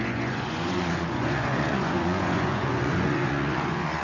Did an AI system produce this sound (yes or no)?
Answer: yes